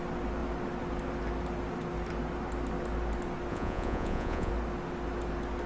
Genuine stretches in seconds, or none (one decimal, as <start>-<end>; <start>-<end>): 0.0-3.5; 4.5-5.7